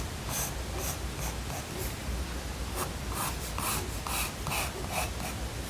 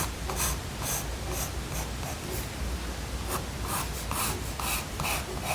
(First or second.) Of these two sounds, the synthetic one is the first